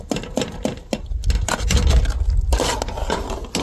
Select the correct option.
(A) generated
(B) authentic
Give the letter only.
B